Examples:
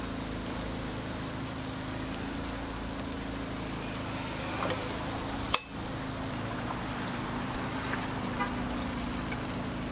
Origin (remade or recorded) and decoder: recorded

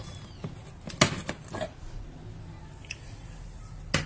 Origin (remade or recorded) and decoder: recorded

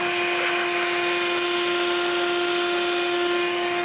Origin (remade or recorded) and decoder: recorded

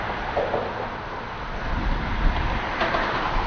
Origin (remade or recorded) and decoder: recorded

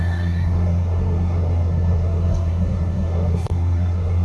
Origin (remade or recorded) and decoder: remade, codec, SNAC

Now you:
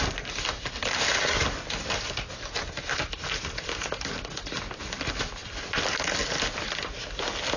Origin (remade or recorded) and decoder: recorded